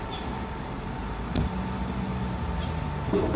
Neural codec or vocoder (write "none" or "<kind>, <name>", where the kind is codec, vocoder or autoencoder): none